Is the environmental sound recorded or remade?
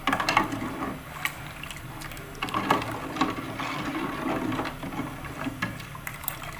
recorded